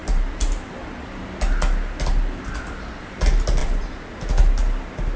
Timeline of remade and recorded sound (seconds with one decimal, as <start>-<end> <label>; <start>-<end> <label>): 0.0-0.7 remade; 0.7-3.6 recorded; 3.6-4.3 remade; 4.3-5.2 recorded